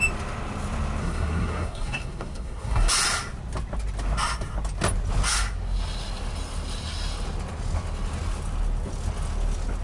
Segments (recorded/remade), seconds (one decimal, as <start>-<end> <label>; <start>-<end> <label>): 0.0-1.0 recorded; 1.0-2.9 remade; 2.9-9.8 recorded